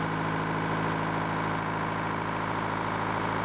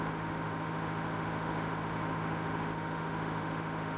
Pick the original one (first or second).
first